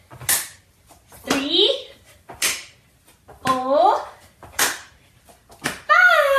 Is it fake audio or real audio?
real